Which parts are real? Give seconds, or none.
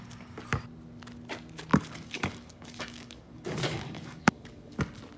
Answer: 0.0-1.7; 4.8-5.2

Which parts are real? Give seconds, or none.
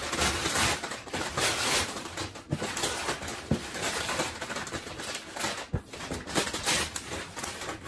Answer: 0.0-0.4; 2.1-3.3; 4.7-7.9